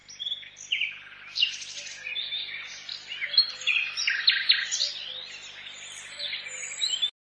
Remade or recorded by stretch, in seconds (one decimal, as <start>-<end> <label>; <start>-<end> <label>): 0.0-7.3 recorded